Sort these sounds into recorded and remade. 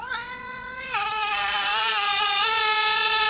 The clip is remade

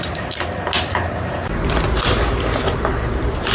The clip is recorded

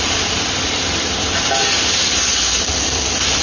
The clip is recorded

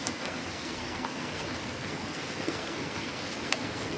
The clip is remade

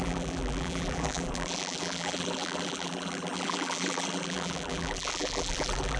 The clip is remade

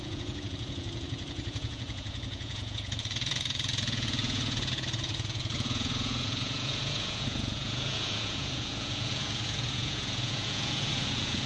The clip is remade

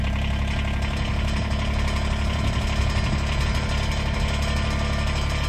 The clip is recorded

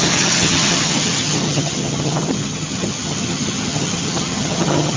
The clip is remade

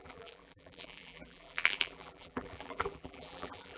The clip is remade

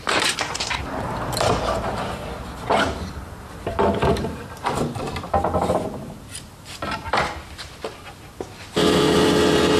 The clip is remade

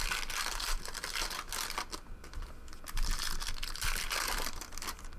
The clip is recorded